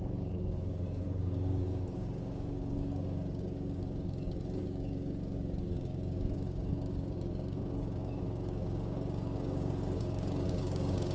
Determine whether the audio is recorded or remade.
remade